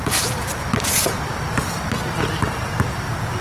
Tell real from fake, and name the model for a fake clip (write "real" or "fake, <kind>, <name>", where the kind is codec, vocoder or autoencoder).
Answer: real